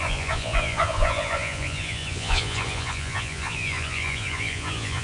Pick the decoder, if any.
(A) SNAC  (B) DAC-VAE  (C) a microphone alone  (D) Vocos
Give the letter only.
D